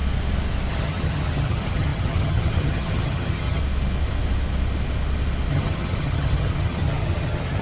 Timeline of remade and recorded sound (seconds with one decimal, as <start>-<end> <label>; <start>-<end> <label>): 0.0-0.7 recorded; 0.7-3.6 remade; 3.6-5.5 recorded; 5.5-7.6 remade